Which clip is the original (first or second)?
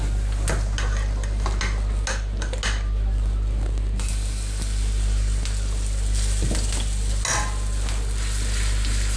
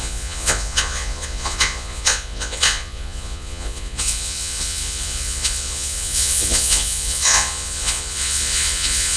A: first